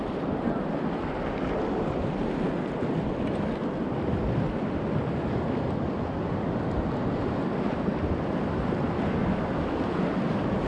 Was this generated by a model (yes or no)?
no